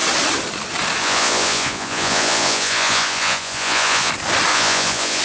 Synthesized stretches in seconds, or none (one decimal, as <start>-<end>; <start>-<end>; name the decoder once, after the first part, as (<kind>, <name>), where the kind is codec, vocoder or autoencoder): 1.0-4.1 (vocoder, Vocos); 4.5-5.2